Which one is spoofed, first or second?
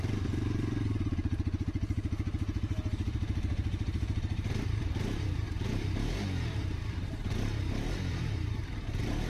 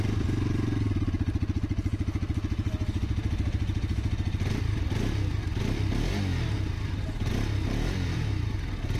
first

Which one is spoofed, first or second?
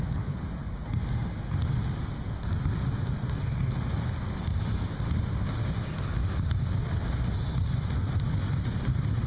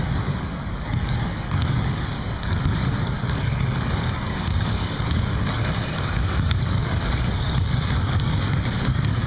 second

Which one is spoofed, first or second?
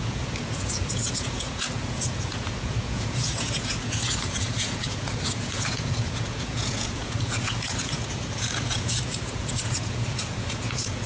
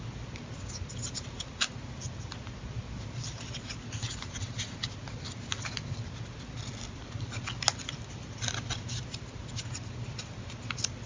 first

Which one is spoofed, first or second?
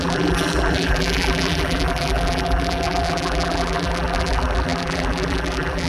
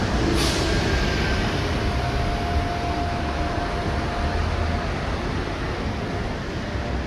first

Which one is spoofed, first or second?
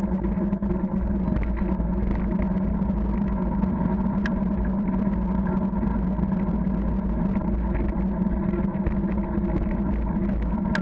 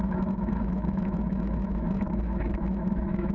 second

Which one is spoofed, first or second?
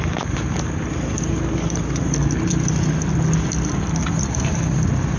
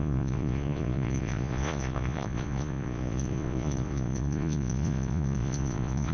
second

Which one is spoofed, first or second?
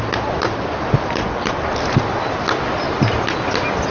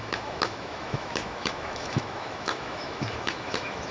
second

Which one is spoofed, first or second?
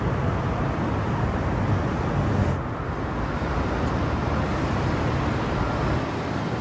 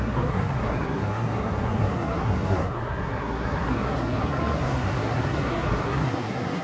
second